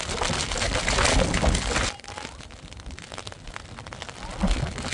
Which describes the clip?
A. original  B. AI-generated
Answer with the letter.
A